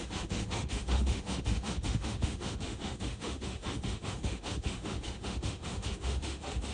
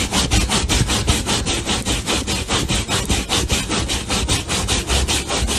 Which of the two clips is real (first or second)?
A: second